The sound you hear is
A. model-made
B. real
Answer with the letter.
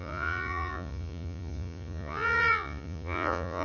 A